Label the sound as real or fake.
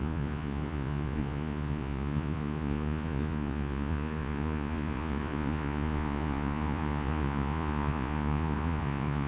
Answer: fake